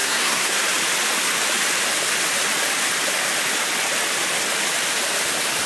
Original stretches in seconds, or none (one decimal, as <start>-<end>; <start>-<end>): 0.6-5.7